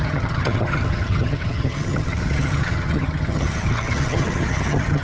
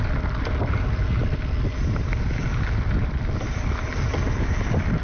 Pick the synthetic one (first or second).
first